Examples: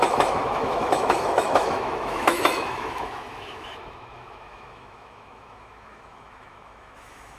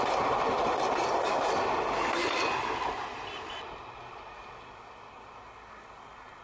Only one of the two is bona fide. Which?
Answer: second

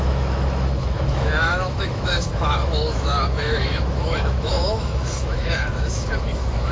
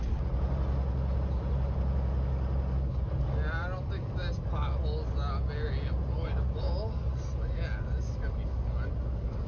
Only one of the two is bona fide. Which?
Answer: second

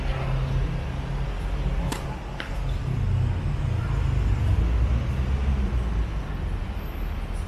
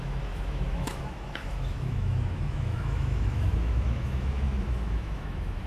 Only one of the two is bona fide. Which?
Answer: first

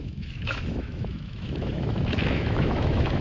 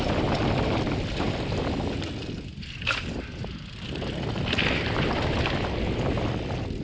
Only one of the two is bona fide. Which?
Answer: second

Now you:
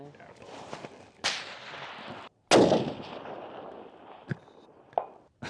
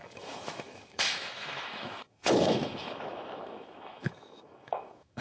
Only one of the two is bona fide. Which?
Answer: first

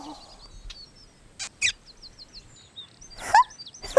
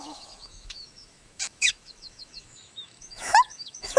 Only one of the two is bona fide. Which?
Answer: first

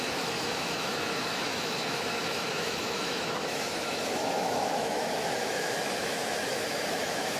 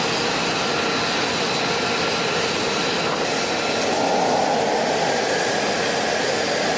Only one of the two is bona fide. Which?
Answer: second